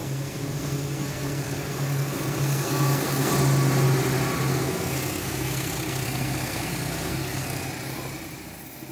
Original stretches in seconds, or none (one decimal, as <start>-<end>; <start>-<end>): 3.3-4.5; 7.7-8.9